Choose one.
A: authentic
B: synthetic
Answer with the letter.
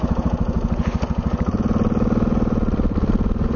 A